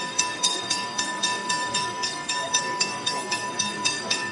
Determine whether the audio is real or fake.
fake